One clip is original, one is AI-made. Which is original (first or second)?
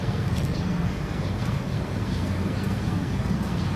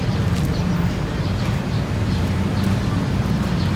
second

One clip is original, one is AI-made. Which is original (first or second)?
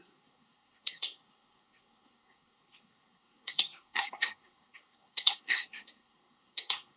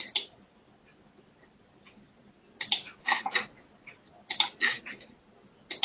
second